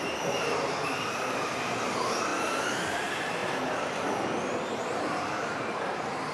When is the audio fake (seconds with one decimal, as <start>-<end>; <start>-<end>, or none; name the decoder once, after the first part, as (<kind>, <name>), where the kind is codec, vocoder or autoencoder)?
0.0-6.3 (vocoder, BigVGAN v2)